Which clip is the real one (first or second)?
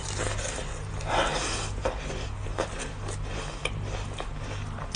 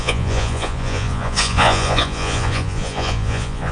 first